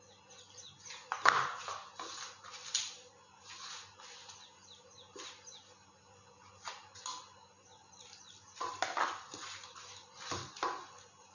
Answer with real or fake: real